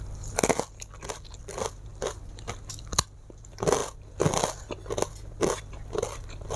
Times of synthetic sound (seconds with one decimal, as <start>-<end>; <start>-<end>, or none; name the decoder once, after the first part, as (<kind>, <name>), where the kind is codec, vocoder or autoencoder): none